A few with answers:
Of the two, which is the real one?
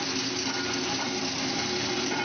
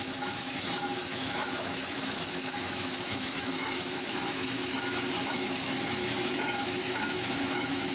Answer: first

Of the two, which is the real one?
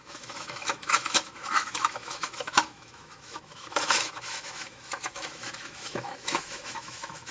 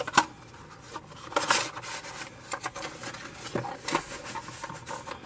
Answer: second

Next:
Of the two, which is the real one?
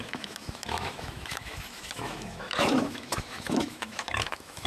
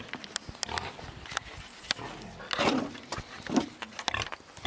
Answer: second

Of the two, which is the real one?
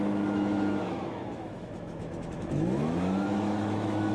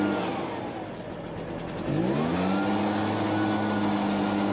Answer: second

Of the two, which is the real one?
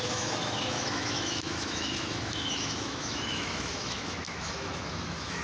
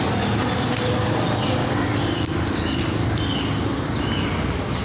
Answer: second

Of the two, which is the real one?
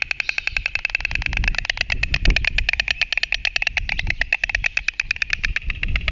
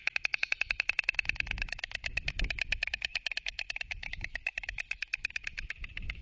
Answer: first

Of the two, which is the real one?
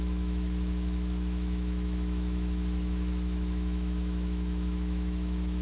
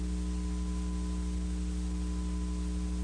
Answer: second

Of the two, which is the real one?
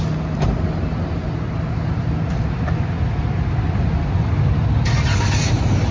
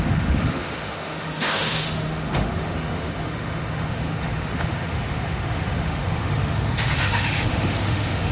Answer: first